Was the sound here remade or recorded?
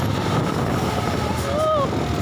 recorded